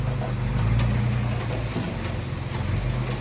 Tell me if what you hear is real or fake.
real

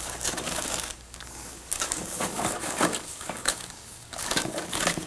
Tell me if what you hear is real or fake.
fake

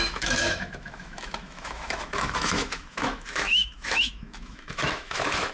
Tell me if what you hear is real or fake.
fake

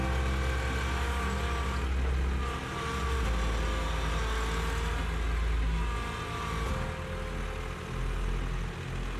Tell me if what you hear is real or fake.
real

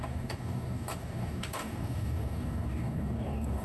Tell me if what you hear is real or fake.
fake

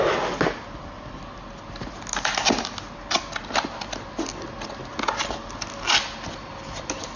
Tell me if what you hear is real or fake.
real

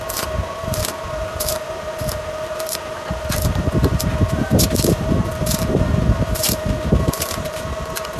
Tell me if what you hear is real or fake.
fake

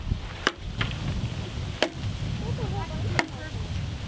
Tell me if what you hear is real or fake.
real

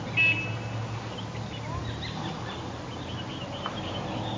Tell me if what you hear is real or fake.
real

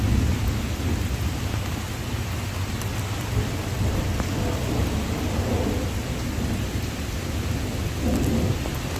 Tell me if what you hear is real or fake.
real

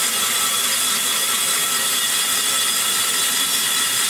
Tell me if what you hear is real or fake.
fake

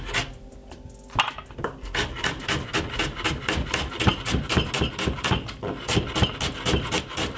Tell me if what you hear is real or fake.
real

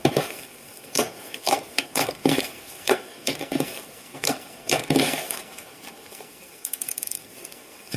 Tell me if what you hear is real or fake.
fake